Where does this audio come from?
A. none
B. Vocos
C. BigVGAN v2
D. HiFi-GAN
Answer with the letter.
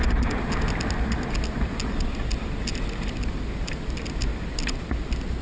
A